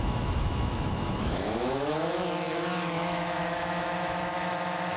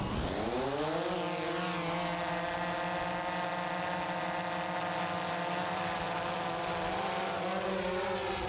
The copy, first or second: first